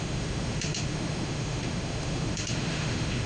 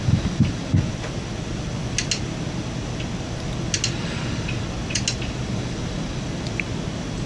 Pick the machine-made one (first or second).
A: first